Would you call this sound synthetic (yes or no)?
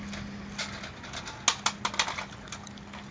no